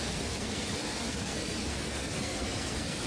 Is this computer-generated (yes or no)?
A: yes